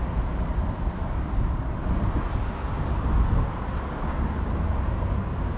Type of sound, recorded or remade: recorded